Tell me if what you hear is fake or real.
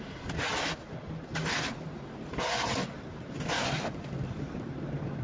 real